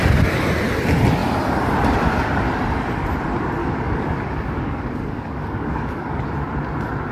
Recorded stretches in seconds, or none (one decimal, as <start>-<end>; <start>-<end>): 0.0-3.6; 6.2-7.1